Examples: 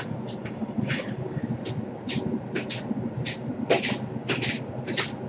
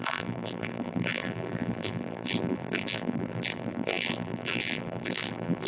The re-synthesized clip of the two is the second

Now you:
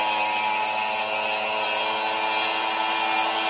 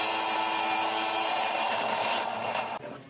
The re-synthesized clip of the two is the second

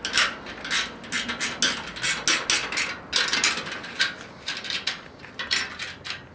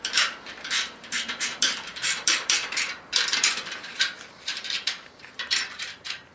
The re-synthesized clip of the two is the second